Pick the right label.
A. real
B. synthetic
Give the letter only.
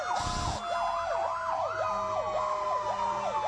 A